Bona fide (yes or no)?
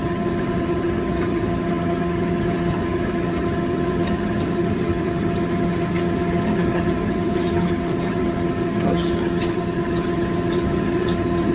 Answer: no